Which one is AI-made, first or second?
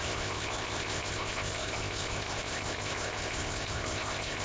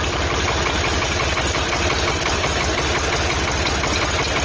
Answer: first